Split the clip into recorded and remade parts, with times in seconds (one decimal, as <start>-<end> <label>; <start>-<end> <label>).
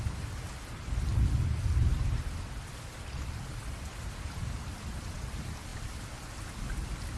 0.0-7.2 recorded